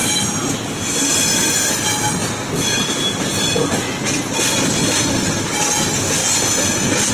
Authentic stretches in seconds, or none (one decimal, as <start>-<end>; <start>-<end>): 0.0-7.1